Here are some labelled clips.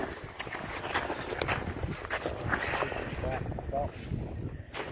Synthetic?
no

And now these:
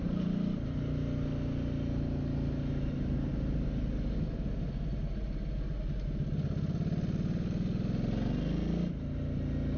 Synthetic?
no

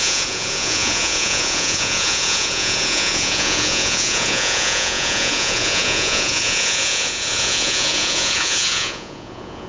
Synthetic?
yes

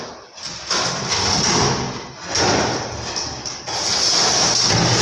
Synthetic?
no